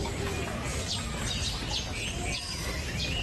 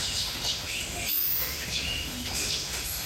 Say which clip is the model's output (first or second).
second